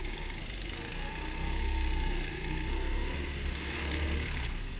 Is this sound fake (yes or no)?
yes